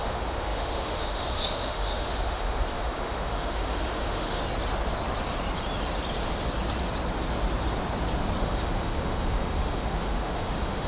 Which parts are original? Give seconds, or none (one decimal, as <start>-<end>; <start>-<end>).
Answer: 4.4-8.4